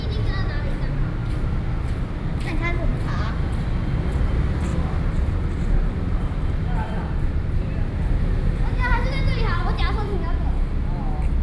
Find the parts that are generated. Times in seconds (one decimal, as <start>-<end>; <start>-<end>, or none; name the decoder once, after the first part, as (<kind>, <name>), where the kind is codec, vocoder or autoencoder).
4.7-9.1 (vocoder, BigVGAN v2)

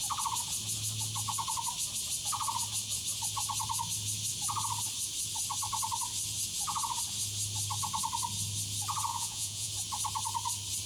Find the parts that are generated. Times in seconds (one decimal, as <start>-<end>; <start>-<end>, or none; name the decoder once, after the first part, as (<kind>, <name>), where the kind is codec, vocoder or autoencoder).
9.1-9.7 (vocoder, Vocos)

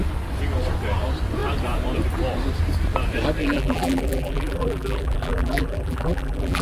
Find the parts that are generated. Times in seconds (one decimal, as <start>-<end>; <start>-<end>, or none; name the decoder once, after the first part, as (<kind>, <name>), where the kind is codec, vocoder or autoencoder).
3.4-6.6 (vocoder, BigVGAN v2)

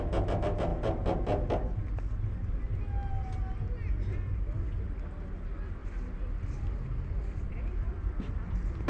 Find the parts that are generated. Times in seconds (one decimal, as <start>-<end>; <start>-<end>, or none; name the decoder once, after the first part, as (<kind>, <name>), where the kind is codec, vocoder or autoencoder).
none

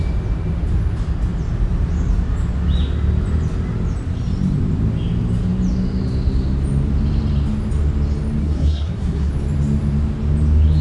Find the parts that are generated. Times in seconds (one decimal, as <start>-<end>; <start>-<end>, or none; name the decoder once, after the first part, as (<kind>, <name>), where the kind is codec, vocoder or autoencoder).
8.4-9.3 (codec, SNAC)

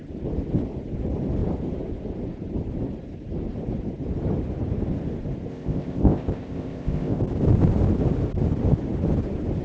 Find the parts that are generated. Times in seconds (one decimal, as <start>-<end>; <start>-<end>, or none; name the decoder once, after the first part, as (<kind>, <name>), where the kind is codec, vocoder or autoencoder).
5.5-7.2 (codec, ZipCodec)

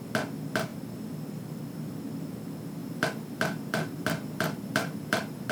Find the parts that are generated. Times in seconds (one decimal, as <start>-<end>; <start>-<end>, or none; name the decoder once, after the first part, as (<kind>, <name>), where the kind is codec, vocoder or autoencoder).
2.8-5.5 (vocoder, BigVGAN v2)